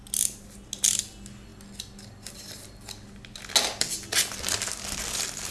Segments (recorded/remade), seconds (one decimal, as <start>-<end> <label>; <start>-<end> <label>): 0.0-5.5 recorded